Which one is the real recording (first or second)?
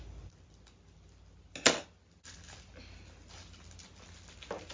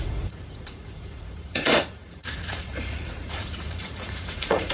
first